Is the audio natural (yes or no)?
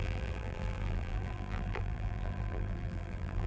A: no